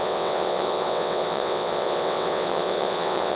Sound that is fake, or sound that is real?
fake